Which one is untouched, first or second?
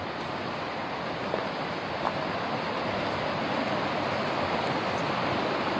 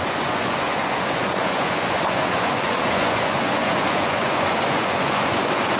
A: first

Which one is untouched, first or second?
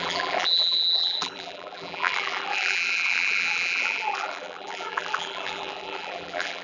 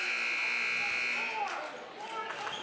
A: second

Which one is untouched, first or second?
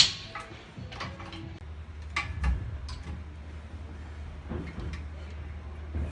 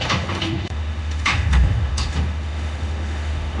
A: first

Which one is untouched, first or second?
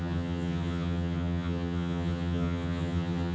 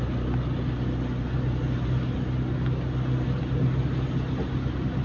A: second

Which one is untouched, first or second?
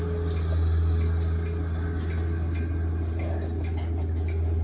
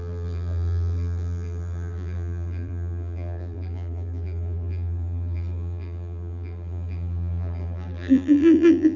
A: first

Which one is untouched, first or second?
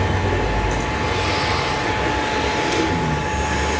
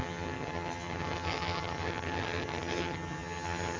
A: first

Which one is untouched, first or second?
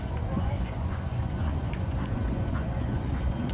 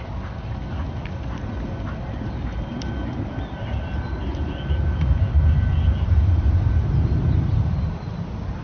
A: second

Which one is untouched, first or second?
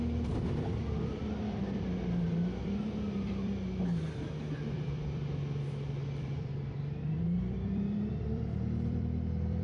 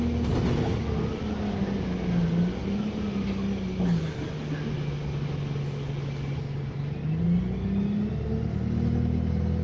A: second